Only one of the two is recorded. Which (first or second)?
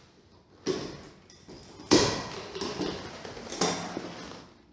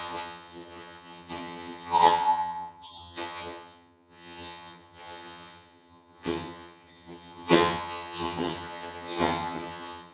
first